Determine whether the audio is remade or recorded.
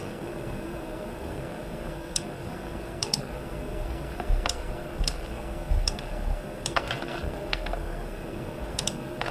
remade